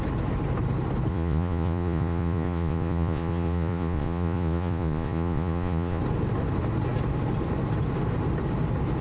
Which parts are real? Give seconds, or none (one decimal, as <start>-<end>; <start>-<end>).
0.0-1.1; 6.0-9.0